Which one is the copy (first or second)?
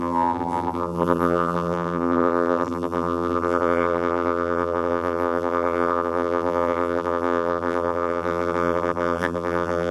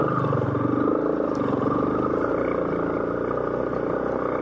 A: first